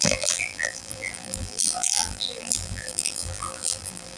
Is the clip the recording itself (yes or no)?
no